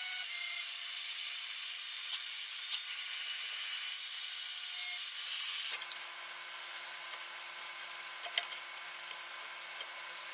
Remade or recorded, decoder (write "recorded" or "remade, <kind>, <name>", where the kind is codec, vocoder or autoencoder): recorded